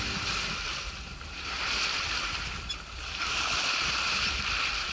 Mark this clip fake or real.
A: real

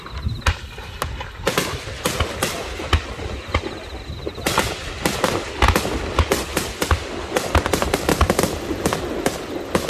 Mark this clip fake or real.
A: real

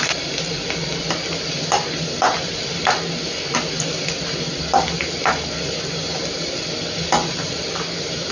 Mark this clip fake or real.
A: fake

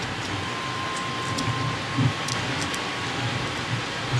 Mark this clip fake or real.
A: real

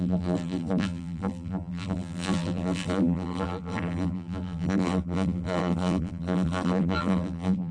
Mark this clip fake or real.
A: fake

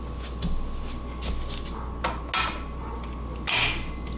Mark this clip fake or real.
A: real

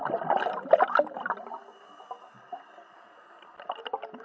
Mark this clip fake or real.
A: real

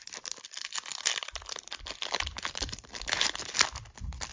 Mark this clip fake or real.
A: real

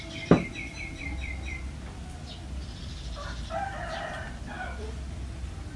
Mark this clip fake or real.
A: fake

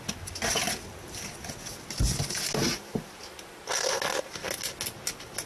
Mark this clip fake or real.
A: real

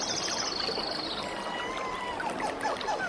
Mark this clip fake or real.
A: real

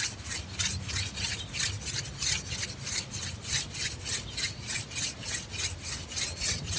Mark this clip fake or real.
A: real